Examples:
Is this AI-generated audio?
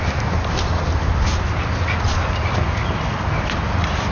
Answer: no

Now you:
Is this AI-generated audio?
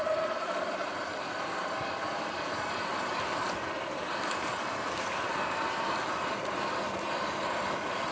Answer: no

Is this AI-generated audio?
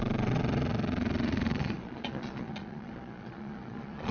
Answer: yes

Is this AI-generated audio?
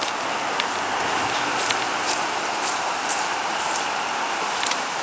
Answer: no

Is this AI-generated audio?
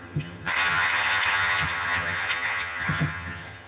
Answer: yes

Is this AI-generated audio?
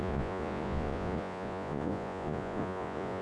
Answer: yes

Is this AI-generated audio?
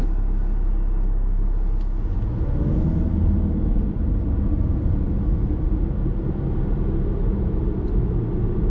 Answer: no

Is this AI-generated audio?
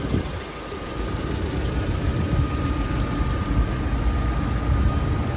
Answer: no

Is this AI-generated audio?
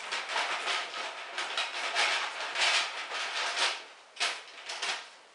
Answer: no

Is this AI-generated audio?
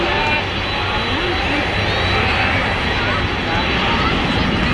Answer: no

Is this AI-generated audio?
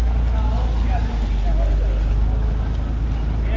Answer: no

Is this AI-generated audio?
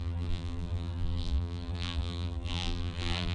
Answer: yes